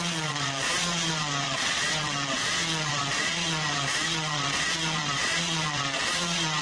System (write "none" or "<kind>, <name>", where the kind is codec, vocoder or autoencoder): vocoder, Vocos